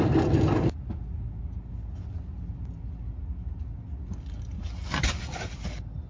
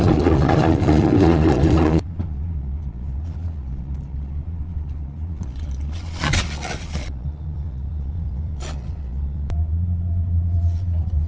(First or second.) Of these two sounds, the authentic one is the first